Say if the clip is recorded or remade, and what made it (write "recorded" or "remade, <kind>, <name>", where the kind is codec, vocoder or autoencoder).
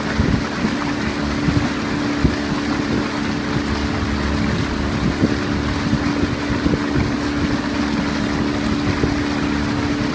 recorded